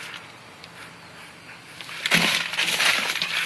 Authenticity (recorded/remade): recorded